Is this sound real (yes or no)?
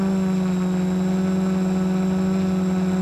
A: yes